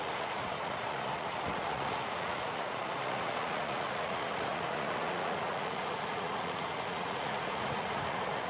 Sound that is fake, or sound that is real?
fake